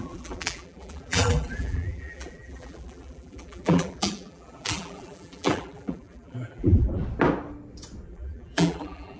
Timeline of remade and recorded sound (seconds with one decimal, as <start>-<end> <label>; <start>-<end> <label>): 0.0-7.0 remade; 7.0-8.1 recorded; 8.1-9.2 remade